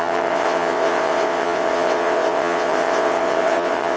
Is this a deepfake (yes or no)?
yes